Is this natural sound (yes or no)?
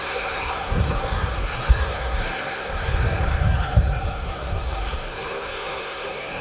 no